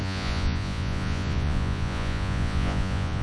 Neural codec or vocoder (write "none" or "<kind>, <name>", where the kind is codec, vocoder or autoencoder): vocoder, Vocos